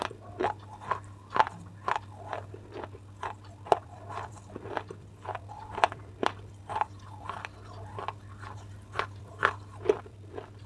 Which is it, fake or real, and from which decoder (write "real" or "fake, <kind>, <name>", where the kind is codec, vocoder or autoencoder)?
fake, vocoder, BigVGAN v2